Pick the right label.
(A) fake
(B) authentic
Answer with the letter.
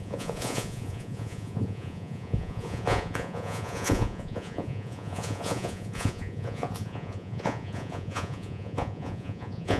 A